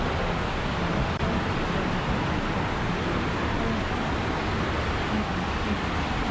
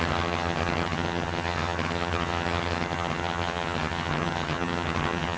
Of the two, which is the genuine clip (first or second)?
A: first